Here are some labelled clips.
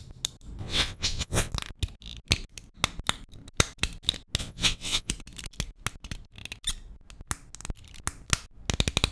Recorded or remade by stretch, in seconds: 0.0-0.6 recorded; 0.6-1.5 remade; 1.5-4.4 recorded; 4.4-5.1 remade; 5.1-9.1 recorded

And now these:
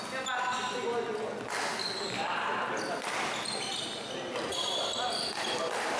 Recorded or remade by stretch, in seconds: 0.0-6.0 recorded

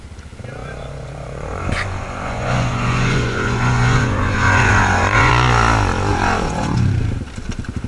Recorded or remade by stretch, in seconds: 0.0-0.6 recorded; 0.6-5.3 remade; 5.3-6.1 recorded; 6.1-6.9 remade; 6.9-7.9 recorded

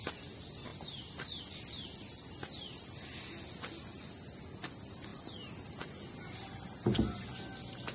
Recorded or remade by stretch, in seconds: 0.0-7.9 recorded

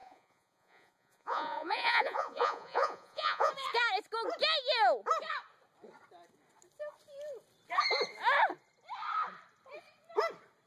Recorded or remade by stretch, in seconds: 0.0-3.5 remade; 3.5-10.7 recorded